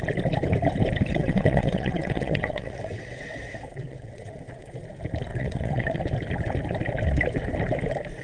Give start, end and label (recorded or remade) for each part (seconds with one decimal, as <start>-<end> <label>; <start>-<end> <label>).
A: 0.0-1.1 recorded; 1.1-4.7 remade; 4.7-5.3 recorded; 5.3-6.0 remade; 6.0-8.2 recorded